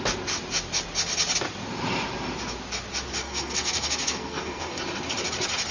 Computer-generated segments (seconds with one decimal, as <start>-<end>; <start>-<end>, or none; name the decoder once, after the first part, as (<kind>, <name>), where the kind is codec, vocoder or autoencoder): 3.2-4.8 (codec, SNAC)